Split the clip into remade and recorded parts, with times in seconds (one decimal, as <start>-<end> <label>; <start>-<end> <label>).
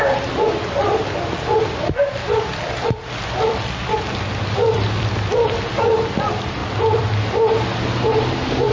0.0-2.2 recorded; 2.2-5.8 remade; 5.8-6.6 recorded; 6.6-7.1 remade; 7.1-8.7 recorded